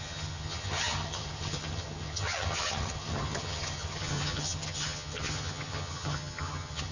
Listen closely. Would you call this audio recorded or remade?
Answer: remade